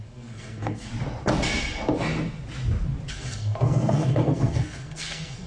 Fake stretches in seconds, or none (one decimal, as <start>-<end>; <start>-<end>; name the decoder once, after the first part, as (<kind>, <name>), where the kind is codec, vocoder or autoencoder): 0.0-0.9 (codec, SNAC); 3.1-5.5